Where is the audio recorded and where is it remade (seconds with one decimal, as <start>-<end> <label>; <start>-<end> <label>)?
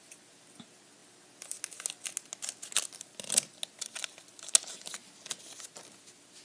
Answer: 0.0-6.4 recorded